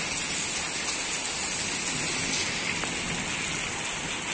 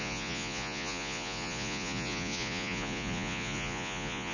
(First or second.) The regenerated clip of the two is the second